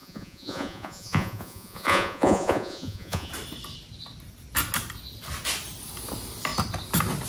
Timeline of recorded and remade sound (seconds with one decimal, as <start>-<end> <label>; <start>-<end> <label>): 0.0-3.3 remade; 3.3-7.3 recorded